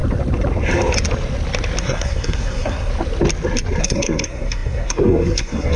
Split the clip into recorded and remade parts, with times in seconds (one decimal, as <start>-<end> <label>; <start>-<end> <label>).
0.0-1.8 recorded; 1.8-2.9 remade; 2.9-3.8 recorded; 3.8-5.8 remade